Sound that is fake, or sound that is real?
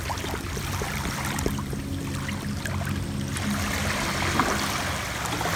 real